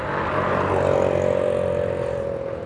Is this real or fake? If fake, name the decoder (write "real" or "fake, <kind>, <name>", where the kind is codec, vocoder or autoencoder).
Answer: real